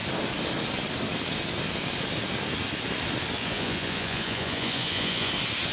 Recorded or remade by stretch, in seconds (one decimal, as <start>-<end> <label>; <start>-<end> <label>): 0.0-3.4 recorded; 3.4-5.3 remade; 5.3-5.7 recorded